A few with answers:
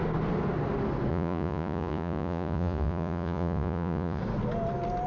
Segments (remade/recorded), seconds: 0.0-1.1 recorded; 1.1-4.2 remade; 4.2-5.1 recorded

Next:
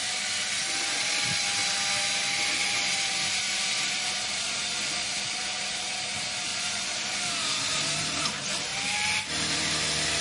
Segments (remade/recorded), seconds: 0.0-6.5 recorded; 6.5-7.2 remade; 7.2-10.2 recorded